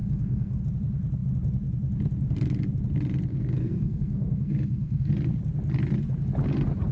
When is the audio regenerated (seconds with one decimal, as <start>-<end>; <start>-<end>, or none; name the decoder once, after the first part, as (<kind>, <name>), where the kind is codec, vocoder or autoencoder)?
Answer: 0.0-0.6 (codec, SNAC); 3.3-5.1